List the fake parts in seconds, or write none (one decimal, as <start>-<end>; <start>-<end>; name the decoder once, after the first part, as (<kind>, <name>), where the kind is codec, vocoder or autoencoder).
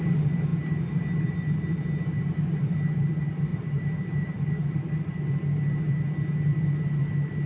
3.5-5.2 (vocoder, BigVGAN v2); 6.5-7.0